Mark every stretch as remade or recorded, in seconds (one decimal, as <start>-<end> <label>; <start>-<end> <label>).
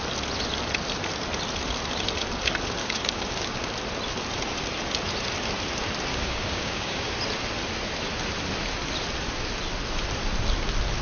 0.0-2.8 recorded; 2.8-3.6 remade; 3.6-6.1 recorded; 6.1-7.1 remade; 7.1-11.0 recorded